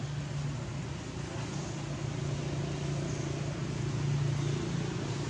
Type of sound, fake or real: real